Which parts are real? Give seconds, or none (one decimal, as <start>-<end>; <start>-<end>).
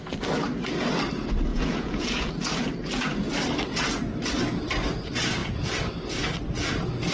0.0-1.5; 2.3-5.4; 5.9-7.1